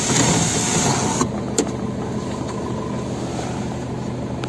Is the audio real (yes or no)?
yes